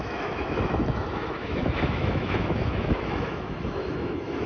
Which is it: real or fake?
fake